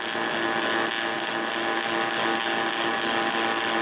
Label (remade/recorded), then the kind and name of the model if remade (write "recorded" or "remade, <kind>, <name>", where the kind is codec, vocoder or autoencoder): recorded